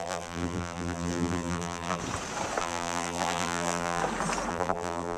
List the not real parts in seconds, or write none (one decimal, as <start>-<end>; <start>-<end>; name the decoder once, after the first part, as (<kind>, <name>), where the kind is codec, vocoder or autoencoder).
0.0-2.0 (vocoder, BigVGAN v2); 2.6-4.0; 4.5-5.2

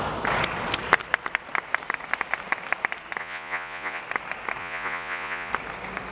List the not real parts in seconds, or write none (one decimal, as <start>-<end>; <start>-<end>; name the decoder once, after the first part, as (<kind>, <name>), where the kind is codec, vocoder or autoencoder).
3.2-4.0 (vocoder, Vocos); 4.6-5.5

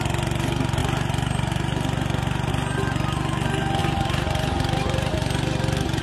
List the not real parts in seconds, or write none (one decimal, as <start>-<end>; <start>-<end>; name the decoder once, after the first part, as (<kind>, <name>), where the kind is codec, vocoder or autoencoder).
3.8-5.1 (vocoder, BigVGAN v2)

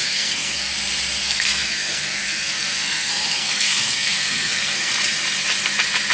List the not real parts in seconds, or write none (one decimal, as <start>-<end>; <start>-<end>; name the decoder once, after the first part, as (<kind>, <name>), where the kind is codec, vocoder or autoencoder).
0.0-0.7 (codec, SNAC); 1.2-4.9

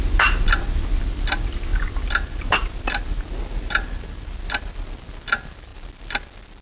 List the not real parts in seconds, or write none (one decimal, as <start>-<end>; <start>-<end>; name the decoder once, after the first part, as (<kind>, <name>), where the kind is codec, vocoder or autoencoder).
none

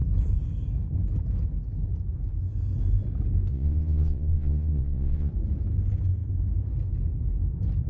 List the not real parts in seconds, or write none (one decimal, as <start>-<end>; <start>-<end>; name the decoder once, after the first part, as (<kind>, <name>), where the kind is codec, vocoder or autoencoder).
3.5-5.3 (vocoder, Vocos)

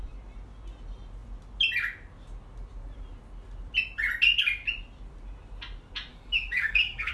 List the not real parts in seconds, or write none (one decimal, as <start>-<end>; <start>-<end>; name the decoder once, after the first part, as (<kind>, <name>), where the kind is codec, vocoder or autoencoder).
6.1-7.1 (codec, DAC)

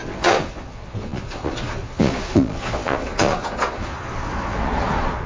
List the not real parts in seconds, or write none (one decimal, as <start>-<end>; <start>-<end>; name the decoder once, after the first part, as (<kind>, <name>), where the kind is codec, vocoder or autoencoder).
0.0-5.3 (vocoder, Vocos)